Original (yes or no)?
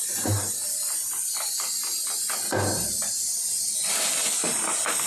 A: yes